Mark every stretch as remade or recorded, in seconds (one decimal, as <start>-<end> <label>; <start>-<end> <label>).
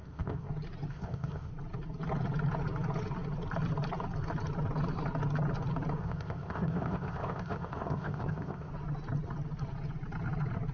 0.0-0.5 remade; 0.5-0.9 recorded; 0.9-1.5 remade; 1.5-6.0 recorded; 6.0-8.7 remade; 8.7-10.7 recorded